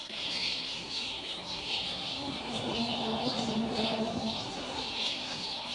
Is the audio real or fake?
fake